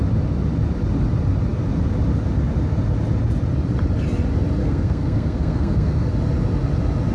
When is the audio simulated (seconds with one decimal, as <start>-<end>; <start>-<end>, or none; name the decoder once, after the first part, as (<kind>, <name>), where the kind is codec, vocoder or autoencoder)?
4.6-6.1 (codec, SNAC)